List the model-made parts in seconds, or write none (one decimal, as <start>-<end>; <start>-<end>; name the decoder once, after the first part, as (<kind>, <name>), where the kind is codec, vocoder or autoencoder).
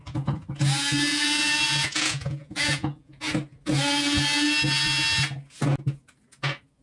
1.1-3.2 (vocoder, Vocos)